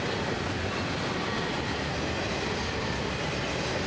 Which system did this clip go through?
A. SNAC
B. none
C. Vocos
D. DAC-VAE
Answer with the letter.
B